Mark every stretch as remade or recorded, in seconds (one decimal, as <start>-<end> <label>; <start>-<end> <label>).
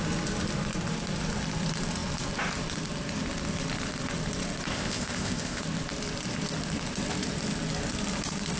0.0-4.7 recorded; 4.7-5.6 remade; 5.6-8.6 recorded